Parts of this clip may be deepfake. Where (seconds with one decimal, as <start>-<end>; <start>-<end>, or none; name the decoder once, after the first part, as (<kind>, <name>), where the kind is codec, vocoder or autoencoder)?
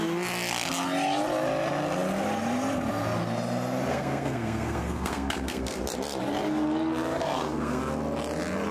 3.9-5.8 (codec, SNAC); 7.2-7.8